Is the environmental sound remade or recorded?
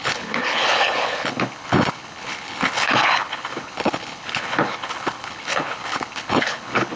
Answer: remade